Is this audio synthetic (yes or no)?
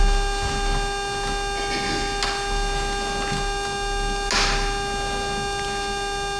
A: no